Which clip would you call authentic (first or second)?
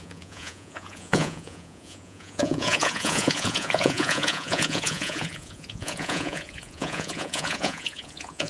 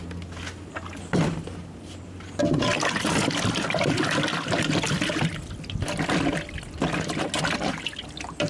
second